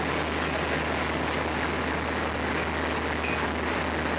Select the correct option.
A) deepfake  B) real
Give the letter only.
B